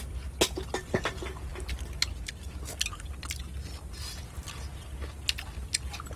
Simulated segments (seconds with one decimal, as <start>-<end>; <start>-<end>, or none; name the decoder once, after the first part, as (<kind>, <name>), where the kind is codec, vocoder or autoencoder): 1.5-2.2 (vocoder, BigVGAN v2)